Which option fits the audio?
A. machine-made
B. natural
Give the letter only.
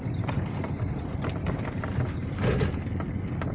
B